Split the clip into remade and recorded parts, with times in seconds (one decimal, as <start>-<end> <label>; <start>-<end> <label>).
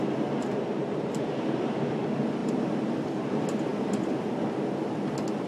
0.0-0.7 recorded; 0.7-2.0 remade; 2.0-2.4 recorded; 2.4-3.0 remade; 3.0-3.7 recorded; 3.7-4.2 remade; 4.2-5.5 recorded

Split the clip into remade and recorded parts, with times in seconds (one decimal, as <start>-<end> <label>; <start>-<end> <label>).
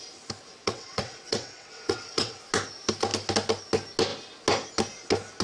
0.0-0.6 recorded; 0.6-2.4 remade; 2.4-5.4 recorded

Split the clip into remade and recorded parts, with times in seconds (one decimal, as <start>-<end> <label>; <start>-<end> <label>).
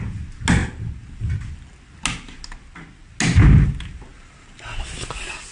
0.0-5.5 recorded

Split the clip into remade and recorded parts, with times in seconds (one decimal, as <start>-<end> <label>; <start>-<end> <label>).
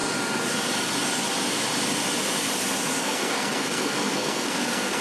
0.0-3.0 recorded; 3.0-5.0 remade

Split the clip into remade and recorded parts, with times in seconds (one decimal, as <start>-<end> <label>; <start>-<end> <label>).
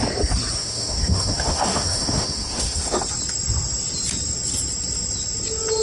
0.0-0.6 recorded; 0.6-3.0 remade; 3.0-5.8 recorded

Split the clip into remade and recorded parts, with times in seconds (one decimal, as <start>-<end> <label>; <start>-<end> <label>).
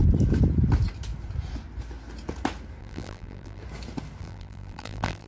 0.0-2.8 recorded; 2.8-3.6 remade; 3.6-4.2 recorded; 4.2-5.3 remade